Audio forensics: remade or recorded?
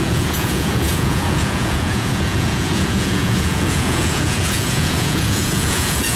remade